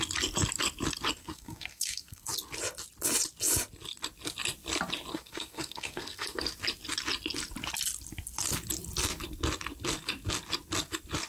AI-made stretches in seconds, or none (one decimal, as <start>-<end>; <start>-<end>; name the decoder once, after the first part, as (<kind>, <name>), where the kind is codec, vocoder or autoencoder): 1.2-2.3 (codec, SNAC); 5.1-6.4